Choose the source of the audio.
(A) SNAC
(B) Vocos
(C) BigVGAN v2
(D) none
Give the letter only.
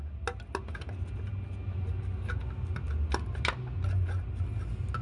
D